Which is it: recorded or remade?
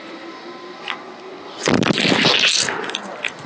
recorded